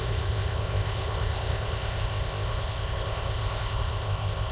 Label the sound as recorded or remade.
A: remade